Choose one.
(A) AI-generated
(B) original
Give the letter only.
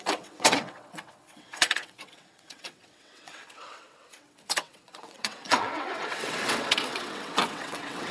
A